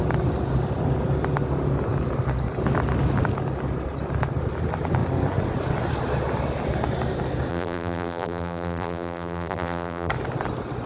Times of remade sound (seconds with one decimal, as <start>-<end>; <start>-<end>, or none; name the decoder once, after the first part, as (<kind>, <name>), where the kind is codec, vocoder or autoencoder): 7.5-10.1 (vocoder, BigVGAN v2)